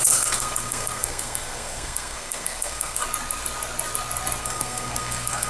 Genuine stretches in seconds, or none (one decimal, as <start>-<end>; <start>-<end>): 3.0-4.4